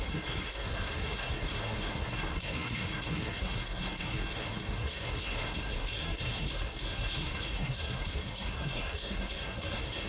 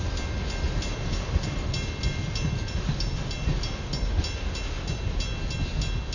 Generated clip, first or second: first